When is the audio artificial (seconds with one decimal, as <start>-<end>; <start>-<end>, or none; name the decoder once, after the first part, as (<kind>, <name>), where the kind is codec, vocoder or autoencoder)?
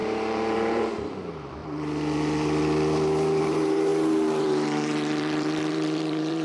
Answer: 0.0-1.6 (vocoder, BigVGAN v2); 3.4-3.9; 4.4-6.4